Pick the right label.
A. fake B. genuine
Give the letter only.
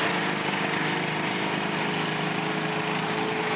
B